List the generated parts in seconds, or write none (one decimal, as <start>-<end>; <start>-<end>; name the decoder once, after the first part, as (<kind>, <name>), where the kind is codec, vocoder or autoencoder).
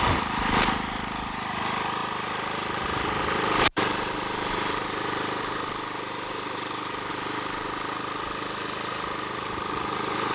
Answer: none